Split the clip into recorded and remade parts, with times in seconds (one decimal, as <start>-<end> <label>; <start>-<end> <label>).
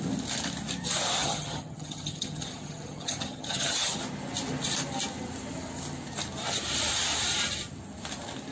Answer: 0.0-1.2 recorded; 1.2-4.0 remade; 4.0-8.5 recorded